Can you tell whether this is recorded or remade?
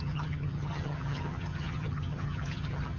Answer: remade